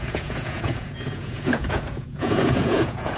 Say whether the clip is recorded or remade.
remade